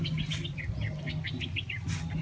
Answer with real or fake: real